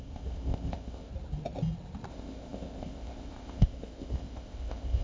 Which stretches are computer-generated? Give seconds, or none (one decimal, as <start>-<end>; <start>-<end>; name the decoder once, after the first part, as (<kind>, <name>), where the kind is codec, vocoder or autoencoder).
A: 0.0-1.1 (codec, ZipCodec); 2.1-5.0